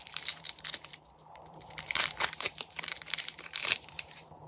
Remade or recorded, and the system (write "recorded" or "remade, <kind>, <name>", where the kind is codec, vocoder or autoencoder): remade, vocoder, BigVGAN v2